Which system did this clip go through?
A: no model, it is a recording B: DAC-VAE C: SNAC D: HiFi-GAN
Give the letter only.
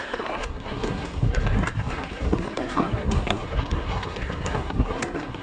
C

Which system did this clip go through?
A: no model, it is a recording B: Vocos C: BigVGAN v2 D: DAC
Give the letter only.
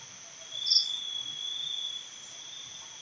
A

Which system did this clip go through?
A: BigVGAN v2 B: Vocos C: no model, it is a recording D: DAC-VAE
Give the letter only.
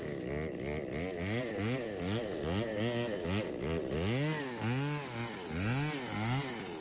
C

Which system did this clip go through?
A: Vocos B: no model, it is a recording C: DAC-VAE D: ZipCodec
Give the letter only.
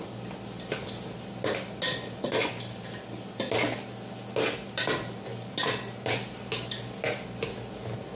B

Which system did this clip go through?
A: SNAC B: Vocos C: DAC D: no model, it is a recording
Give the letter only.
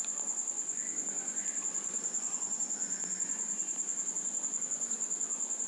B